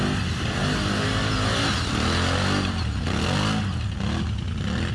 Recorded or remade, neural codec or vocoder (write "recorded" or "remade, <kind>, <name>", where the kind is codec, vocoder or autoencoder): recorded